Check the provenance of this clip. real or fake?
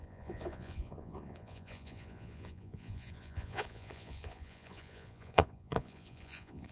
fake